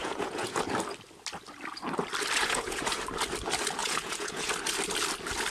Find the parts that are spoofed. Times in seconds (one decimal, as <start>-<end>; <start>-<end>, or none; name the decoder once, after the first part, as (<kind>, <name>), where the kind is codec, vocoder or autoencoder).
0.0-0.6 (vocoder, Vocos); 2.4-3.0; 3.8-4.5